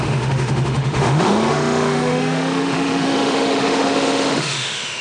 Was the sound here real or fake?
fake